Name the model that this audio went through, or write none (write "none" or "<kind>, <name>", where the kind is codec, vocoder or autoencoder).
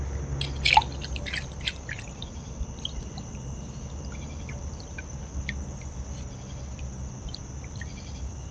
none